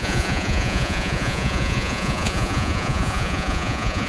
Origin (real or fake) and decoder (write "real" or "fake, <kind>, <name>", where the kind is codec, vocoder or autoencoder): fake, vocoder, Vocos